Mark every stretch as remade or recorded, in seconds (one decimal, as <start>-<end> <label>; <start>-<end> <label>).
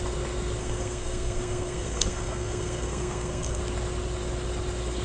0.0-0.6 recorded; 0.6-3.6 remade; 3.6-5.0 recorded